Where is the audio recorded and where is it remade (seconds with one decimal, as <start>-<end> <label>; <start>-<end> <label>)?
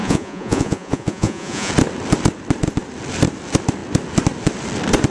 0.0-1.7 remade; 1.7-5.1 recorded